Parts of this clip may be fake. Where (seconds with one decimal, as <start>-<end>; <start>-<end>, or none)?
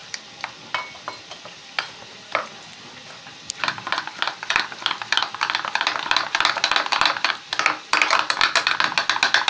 none